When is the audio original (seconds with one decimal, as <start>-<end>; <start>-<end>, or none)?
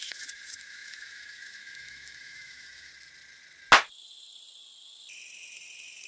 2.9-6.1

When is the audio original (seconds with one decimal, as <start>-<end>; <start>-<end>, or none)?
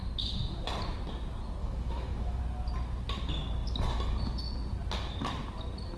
0.0-1.6; 2.4-6.0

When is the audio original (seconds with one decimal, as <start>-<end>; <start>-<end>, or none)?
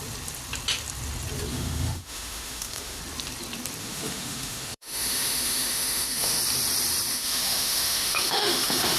0.0-1.5; 3.0-3.8; 6.4-7.1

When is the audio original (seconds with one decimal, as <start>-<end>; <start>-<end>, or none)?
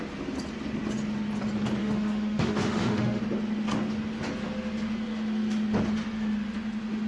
0.0-1.8; 3.2-7.1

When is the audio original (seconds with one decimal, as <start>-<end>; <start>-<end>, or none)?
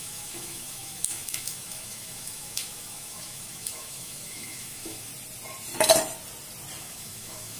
5.1-6.8